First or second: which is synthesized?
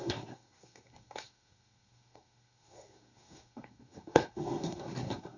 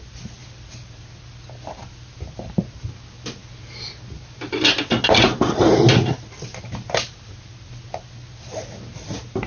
first